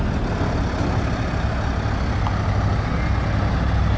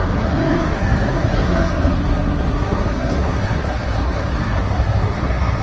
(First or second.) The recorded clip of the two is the first